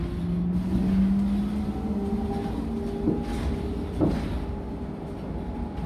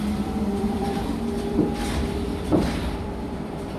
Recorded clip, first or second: first